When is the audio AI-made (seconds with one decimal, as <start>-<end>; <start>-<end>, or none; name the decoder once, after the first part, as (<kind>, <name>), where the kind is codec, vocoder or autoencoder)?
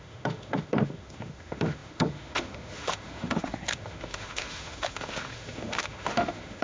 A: 0.0-6.6 (autoencoder, DAC-VAE)